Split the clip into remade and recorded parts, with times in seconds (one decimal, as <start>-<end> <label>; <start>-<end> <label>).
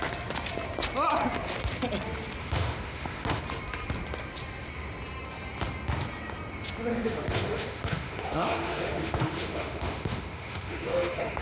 0.0-2.4 recorded; 2.4-3.4 remade; 3.4-6.9 recorded; 6.9-11.4 remade